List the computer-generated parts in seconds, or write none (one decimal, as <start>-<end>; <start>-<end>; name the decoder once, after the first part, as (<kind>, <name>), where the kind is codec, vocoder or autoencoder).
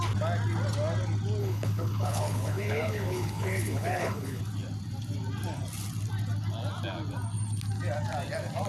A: 1.4-4.4 (codec, HILCodec)